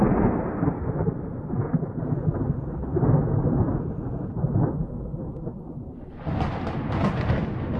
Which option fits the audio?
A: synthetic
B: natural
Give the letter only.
B